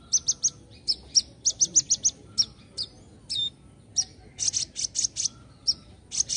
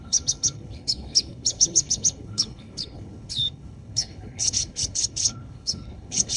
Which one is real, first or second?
first